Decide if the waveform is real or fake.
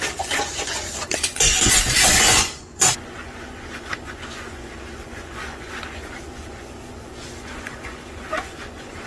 fake